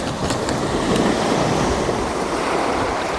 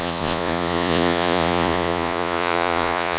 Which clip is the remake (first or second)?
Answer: second